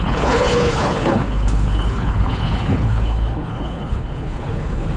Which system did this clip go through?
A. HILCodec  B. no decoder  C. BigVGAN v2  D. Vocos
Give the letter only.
A